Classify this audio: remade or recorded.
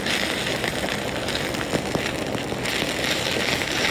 recorded